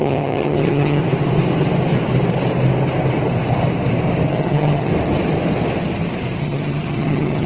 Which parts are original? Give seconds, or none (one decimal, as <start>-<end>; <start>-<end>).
1.0-4.3; 4.9-6.4